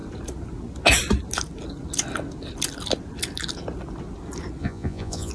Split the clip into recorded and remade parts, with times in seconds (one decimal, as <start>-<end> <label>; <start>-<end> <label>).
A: 0.0-4.6 recorded; 4.6-5.3 remade